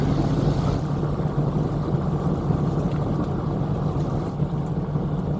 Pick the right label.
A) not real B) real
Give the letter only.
B